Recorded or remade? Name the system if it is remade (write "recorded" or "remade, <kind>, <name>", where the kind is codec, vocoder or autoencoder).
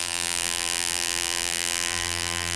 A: remade, vocoder, BigVGAN v2